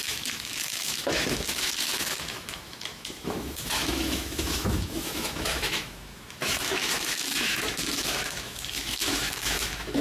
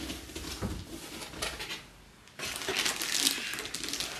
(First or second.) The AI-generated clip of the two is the first